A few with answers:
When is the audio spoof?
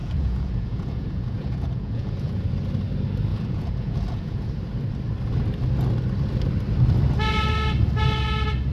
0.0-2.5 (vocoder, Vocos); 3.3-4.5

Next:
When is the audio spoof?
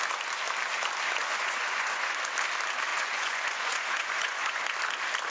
1.2-2.2 (vocoder, Vocos); 2.9-4.6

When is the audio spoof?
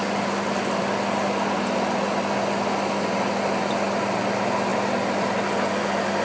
none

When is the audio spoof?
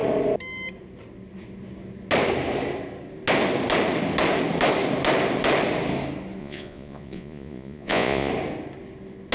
6.4-8.3 (vocoder, Vocos)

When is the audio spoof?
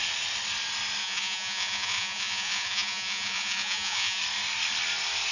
1.0-4.2 (vocoder, Vocos)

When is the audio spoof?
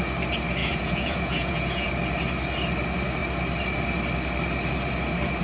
0.6-1.9 (vocoder, Vocos)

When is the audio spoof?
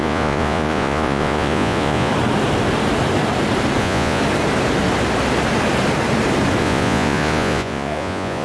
0.0-2.1 (vocoder, Vocos); 3.8-4.2; 6.6-8.4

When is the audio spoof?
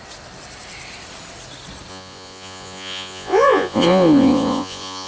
1.9-5.1 (vocoder, Vocos)